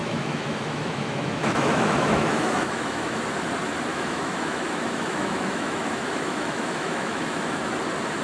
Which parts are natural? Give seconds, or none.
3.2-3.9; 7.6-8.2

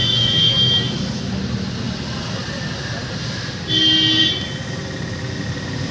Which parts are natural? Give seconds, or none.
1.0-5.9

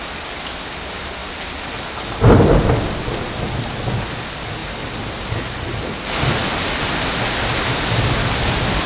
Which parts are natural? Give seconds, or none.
0.0-8.9

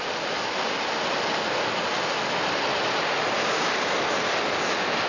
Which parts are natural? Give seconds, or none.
0.0-5.1